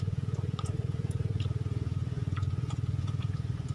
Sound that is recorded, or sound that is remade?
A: remade